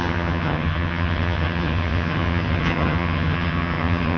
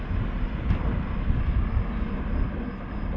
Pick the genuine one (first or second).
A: second